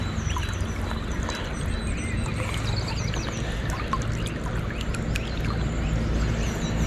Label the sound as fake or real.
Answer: real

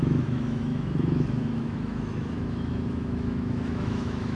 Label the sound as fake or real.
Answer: fake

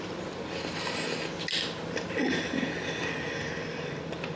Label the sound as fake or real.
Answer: real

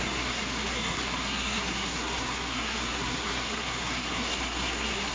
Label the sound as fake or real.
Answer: fake